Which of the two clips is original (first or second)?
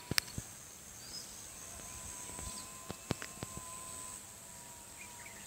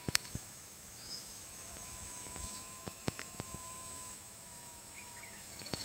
first